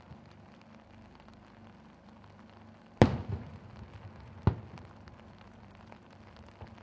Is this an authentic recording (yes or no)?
yes